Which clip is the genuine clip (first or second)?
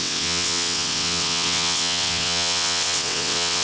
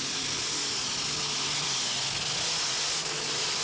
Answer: second